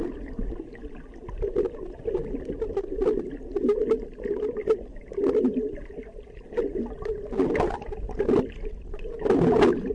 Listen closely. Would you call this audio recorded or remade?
recorded